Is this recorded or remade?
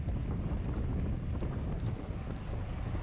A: recorded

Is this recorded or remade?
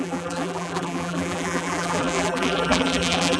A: remade